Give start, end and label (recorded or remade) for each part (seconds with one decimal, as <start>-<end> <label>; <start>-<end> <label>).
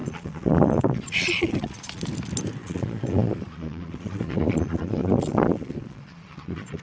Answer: 0.0-2.0 remade; 2.0-2.6 recorded; 2.6-6.8 remade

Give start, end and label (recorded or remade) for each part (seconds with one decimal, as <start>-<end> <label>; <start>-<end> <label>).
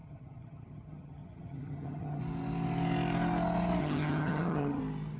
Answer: 0.0-2.2 remade; 2.2-3.8 recorded; 3.8-4.8 remade; 4.8-5.2 recorded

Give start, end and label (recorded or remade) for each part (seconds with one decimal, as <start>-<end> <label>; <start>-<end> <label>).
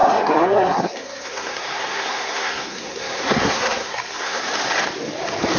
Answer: 0.0-4.4 remade; 4.4-5.6 recorded